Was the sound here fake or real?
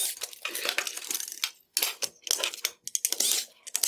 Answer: real